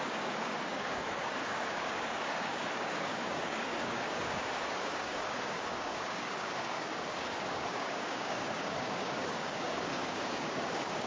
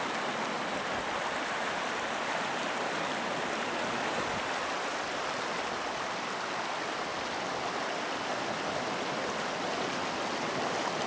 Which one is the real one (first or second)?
second